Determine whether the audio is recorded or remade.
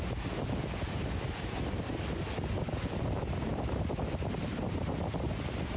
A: recorded